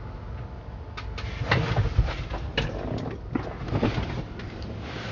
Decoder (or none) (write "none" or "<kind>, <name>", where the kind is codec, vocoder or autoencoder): none